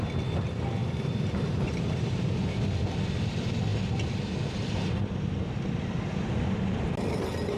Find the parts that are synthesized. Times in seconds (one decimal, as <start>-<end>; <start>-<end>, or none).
0.8-2.6